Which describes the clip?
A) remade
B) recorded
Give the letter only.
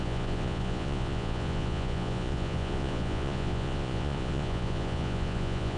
A